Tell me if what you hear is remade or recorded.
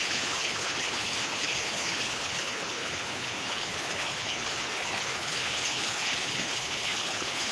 remade